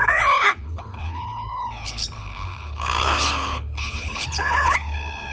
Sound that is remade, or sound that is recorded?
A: remade